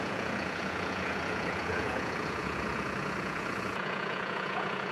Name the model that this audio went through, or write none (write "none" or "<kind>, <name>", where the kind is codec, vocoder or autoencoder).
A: vocoder, Vocos